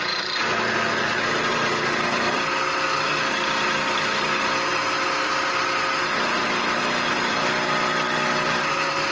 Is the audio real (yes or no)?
yes